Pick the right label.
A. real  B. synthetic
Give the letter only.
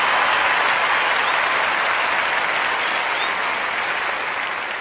A